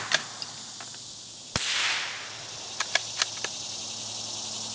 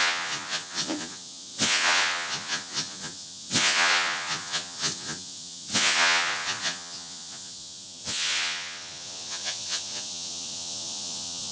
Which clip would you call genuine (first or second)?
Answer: first